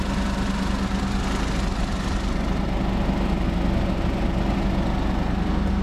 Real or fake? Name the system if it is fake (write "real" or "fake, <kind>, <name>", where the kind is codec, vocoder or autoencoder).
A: real